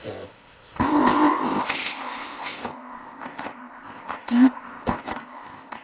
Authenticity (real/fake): fake